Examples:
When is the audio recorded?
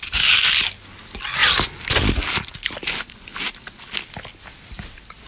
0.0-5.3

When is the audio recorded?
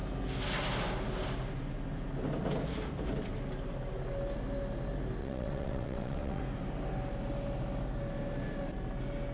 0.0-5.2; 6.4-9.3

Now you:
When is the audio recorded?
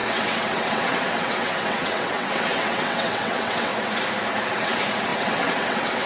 3.7-4.5